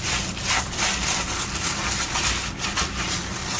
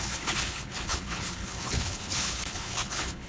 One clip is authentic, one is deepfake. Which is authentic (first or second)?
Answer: first